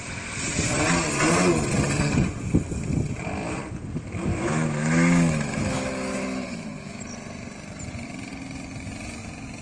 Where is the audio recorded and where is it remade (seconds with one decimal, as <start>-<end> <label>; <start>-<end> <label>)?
0.0-4.3 recorded; 4.3-7.0 remade; 7.0-9.6 recorded